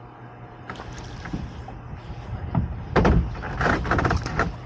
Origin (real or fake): real